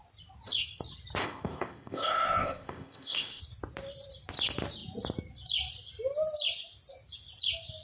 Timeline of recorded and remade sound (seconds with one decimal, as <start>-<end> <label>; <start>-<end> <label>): 0.0-1.2 recorded; 1.2-3.4 remade; 3.4-7.8 recorded